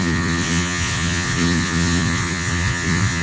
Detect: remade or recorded remade